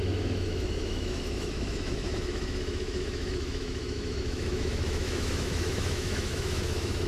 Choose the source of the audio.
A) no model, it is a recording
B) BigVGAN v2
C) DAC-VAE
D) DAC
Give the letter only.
C